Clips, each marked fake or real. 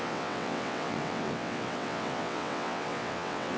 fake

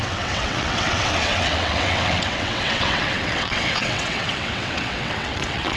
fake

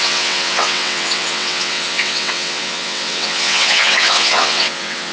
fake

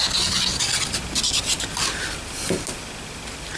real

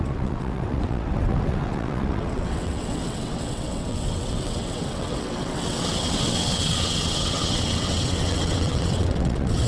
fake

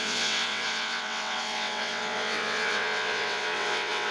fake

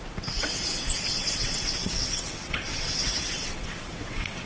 fake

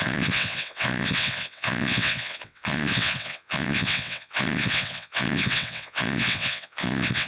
fake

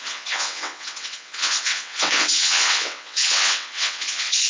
fake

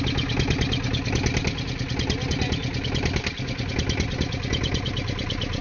real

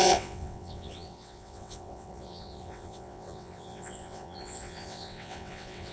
fake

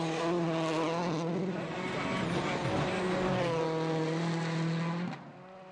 real